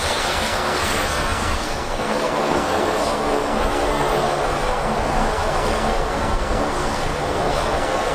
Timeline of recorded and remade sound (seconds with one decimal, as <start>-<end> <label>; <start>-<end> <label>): 0.0-8.1 remade